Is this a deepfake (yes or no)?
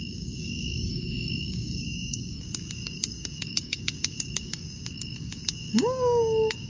yes